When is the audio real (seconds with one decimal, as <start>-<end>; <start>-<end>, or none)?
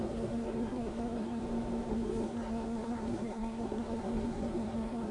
1.4-1.9